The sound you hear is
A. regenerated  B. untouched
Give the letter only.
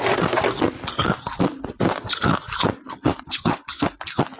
B